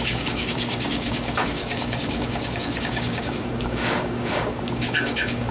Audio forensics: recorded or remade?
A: remade